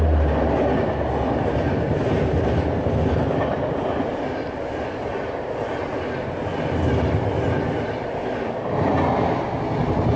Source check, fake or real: real